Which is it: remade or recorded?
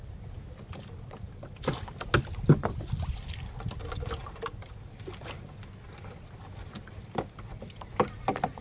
recorded